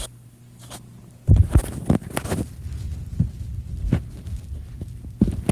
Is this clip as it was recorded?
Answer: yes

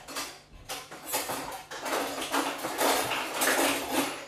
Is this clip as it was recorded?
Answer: yes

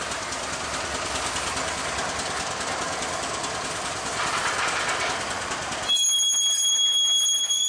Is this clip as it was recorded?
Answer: no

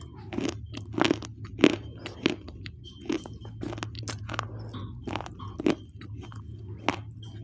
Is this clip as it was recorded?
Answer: yes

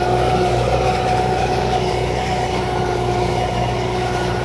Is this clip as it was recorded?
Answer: no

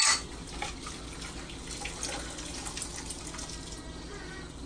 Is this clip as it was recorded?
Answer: yes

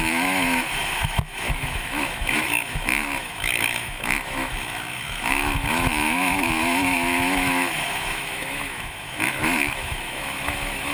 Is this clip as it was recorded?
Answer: no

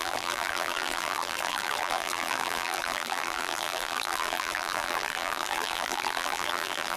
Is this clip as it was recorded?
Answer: no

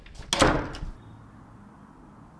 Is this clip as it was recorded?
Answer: yes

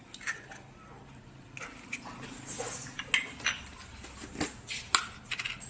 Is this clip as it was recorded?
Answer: yes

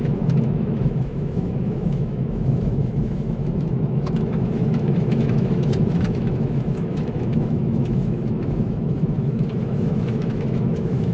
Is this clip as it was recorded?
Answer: no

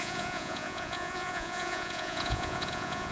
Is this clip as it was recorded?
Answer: no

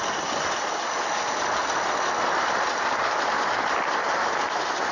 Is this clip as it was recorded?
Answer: yes